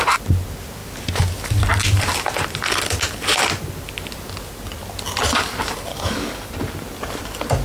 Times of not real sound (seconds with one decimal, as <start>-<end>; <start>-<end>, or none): 5.9-6.5